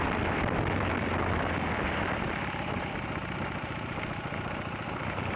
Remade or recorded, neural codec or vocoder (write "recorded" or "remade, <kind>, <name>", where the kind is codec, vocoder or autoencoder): remade, vocoder, BigVGAN v2